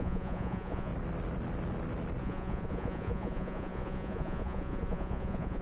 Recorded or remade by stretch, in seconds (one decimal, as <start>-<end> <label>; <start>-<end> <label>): 0.0-0.9 remade; 0.9-2.2 recorded; 2.2-5.6 remade